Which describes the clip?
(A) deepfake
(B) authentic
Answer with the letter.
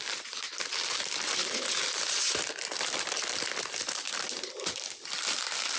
B